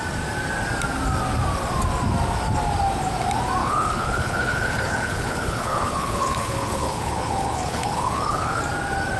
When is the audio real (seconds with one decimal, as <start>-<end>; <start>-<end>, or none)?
0.0-3.6; 8.6-9.2